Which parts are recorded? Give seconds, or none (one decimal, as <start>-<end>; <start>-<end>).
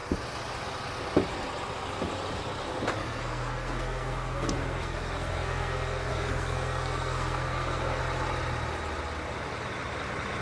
0.0-3.0; 8.0-10.4